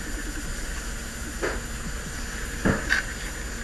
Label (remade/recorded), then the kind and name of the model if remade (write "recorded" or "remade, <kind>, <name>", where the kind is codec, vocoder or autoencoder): recorded